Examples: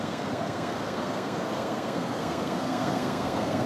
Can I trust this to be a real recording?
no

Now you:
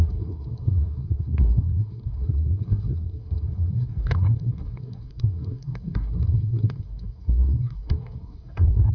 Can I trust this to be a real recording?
no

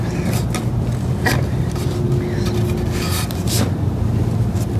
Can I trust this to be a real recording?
yes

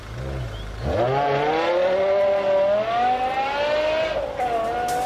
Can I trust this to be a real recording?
yes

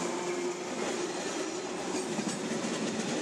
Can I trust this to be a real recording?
yes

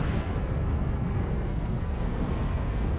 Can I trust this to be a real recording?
no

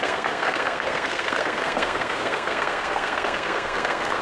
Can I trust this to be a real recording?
no